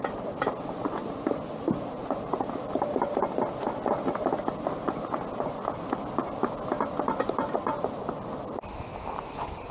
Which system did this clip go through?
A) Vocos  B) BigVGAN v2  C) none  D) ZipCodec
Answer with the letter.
C